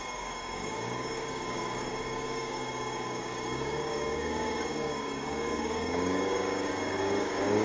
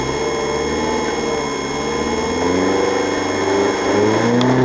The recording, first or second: second